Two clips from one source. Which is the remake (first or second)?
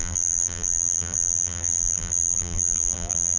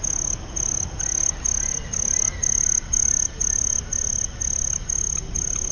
first